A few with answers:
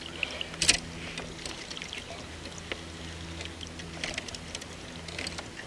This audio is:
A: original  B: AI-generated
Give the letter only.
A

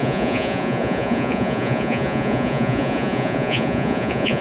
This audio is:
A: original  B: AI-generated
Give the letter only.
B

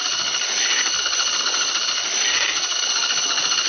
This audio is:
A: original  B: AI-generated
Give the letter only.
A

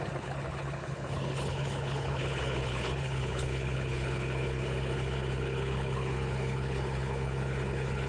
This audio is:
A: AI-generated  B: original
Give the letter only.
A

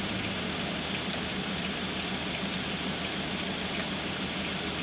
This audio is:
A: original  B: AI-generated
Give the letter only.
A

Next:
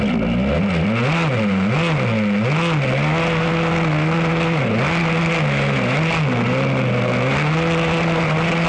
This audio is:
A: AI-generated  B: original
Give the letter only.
B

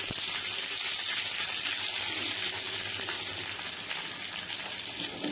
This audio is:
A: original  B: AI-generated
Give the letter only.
A